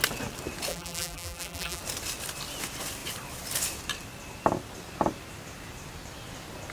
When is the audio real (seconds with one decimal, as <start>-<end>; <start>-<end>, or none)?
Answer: 0.0-0.7; 1.8-6.7